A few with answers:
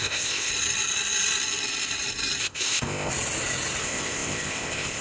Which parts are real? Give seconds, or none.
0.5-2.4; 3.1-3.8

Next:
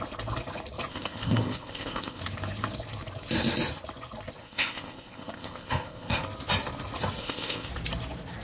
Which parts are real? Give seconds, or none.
0.0-0.9; 2.2-4.4; 6.2-7.2; 7.7-8.4

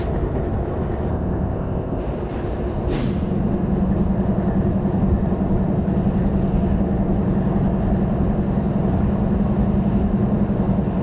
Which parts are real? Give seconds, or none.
0.0-1.1; 2.0-11.0

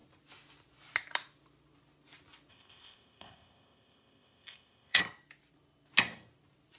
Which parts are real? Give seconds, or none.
0.0-2.5; 5.0-6.8

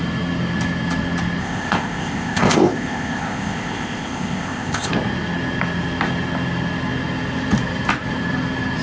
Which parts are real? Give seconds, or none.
0.0-1.4; 4.9-8.8

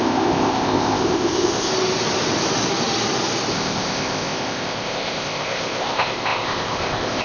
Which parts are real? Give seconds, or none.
1.7-3.5

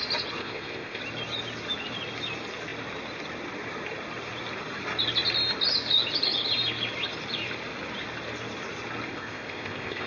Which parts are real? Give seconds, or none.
0.0-0.4; 1.0-9.1

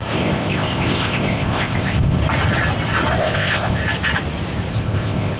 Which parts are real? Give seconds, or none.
2.2-3.2; 3.8-4.7